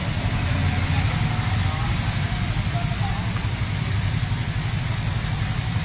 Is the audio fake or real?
real